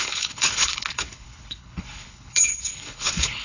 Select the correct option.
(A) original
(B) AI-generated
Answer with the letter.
B